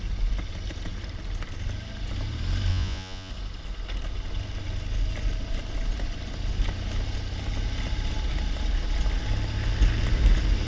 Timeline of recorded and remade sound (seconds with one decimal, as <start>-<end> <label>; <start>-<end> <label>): 0.0-2.7 recorded; 2.7-3.3 remade; 3.3-10.7 recorded